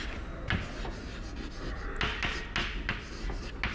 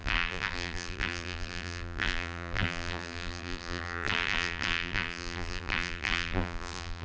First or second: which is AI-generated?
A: second